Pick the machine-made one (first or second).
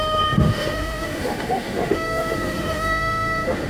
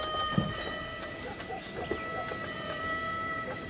first